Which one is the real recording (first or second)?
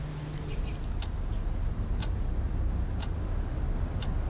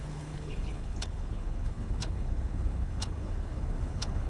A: first